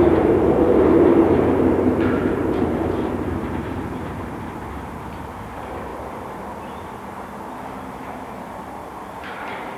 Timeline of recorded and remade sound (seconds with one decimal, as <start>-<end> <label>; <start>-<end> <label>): 0.0-5.9 remade; 5.9-8.1 recorded; 8.1-9.8 remade